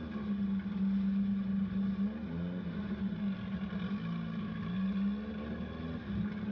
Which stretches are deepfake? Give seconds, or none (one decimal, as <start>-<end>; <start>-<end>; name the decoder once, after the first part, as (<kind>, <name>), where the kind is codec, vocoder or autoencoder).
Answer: none